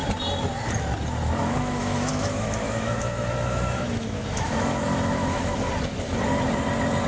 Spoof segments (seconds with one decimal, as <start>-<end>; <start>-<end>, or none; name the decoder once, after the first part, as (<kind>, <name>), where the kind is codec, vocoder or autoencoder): 1.4-5.7 (autoencoder, DAC-VAE)